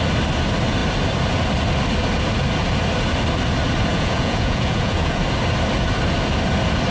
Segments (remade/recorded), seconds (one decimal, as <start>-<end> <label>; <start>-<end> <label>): 0.0-3.9 recorded; 3.9-5.2 remade; 5.2-6.9 recorded